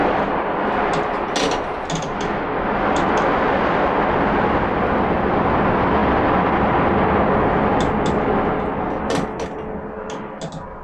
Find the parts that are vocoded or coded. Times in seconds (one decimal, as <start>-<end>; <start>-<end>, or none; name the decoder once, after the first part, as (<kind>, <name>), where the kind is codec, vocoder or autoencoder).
none